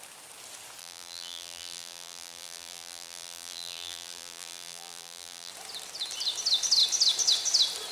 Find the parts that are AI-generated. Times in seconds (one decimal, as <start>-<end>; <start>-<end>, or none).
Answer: 0.8-5.5